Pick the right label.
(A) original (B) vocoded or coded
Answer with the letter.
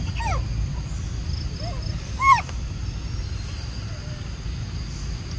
A